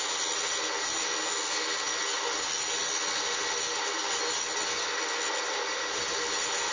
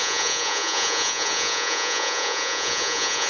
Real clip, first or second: first